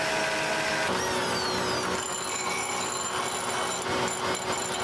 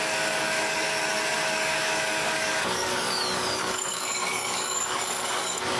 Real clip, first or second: first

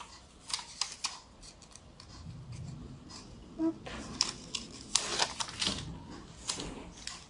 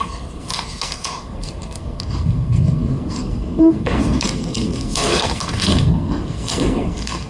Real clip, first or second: first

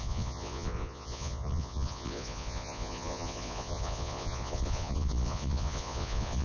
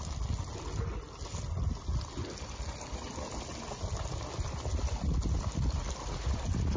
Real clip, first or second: second